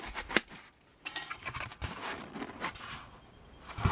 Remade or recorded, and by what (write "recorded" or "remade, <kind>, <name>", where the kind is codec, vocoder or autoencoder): recorded